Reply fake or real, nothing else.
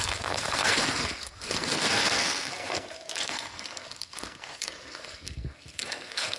fake